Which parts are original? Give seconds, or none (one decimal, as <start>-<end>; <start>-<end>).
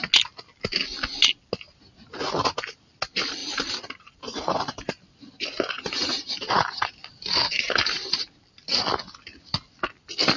0.0-3.4; 8.2-10.4